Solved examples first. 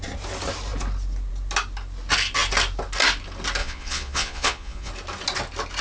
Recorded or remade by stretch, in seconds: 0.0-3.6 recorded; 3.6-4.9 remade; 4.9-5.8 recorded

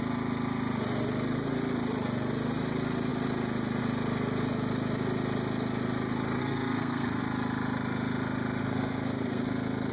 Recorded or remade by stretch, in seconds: 0.0-6.4 recorded; 6.4-7.2 remade; 7.2-8.6 recorded; 8.6-9.5 remade; 9.5-9.9 recorded

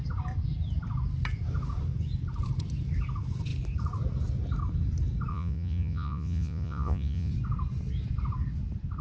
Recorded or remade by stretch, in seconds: 0.0-5.3 recorded; 5.3-7.3 remade; 7.3-9.0 recorded

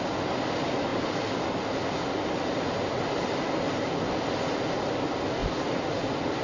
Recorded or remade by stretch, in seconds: 0.0-6.4 recorded

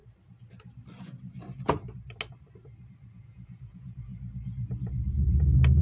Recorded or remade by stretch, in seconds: 0.0-3.1 recorded; 3.1-4.1 remade; 4.1-5.8 recorded